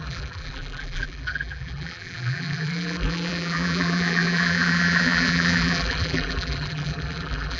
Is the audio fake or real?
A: fake